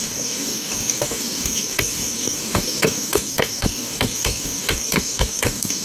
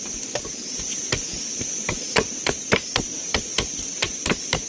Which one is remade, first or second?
first